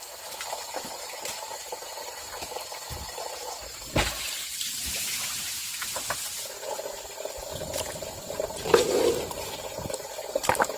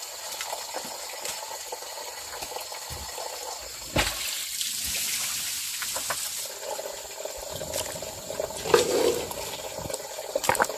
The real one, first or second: second